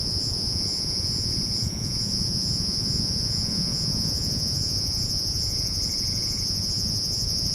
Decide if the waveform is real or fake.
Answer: fake